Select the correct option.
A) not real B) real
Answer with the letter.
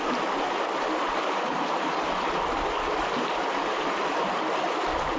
B